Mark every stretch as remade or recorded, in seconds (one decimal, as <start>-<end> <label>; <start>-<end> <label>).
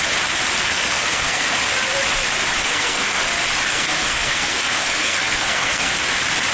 0.0-0.6 recorded; 0.6-1.6 remade; 1.6-2.6 recorded; 2.6-3.2 remade; 3.2-3.7 recorded; 3.7-5.9 remade; 5.9-6.5 recorded